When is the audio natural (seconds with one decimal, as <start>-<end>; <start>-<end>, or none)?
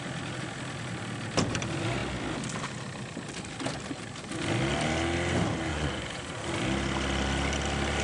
0.0-5.7; 6.4-8.0